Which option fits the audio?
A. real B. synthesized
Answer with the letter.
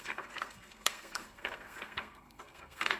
B